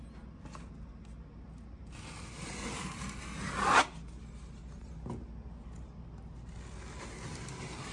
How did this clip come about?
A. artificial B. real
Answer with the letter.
B